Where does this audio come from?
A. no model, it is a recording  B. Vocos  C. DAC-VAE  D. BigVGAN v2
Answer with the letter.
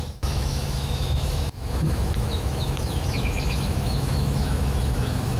C